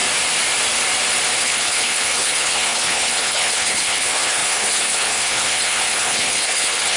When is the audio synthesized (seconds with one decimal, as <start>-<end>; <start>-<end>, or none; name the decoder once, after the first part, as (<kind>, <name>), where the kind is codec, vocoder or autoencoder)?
1.4-7.0 (codec, HILCodec)